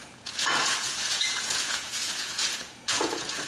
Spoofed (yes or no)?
yes